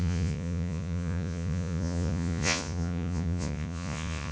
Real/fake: fake